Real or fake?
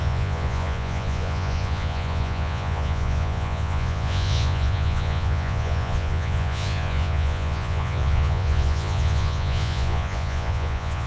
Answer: fake